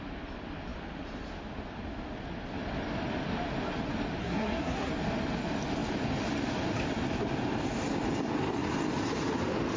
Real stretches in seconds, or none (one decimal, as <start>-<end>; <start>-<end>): 0.0-4.2; 4.9-9.8